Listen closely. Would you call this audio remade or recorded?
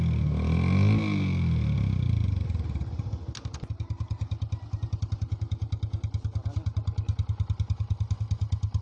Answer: recorded